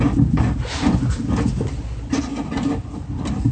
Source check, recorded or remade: recorded